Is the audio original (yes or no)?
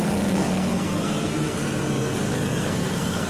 no